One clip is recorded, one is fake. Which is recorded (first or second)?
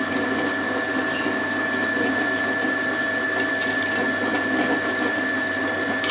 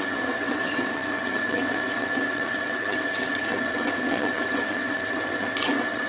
first